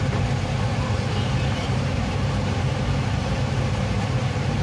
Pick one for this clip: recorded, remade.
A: remade